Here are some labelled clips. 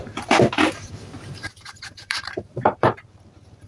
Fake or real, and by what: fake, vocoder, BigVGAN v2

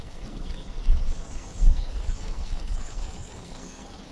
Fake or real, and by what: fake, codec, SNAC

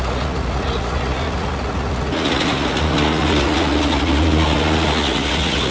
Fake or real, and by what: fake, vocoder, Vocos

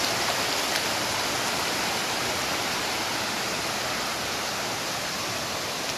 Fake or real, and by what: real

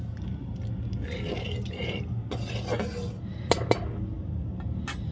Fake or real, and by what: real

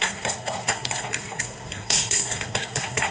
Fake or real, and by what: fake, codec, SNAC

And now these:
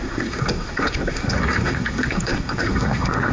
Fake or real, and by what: fake, codec, SNAC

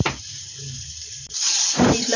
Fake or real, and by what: fake, vocoder, BigVGAN v2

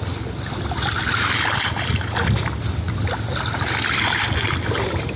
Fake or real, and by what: real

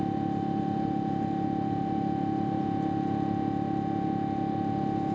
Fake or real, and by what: real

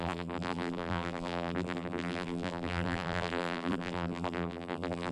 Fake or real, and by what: fake, vocoder, BigVGAN v2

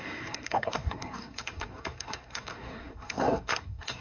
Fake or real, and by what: fake, codec, SNAC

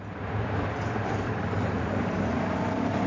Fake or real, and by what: fake, vocoder, BigVGAN v2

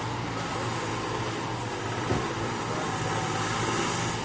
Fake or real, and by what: real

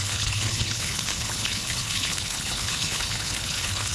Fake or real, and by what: fake, codec, HILCodec